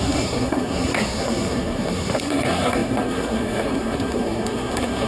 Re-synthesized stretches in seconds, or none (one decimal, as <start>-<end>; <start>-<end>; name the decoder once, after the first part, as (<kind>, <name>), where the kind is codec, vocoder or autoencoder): 0.0-5.1 (codec, SNAC)